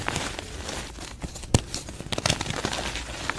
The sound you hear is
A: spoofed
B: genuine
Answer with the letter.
B